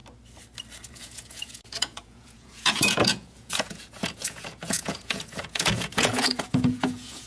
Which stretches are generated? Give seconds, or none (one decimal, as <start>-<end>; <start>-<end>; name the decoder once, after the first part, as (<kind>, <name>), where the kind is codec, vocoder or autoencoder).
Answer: 0.9-7.3 (vocoder, Vocos)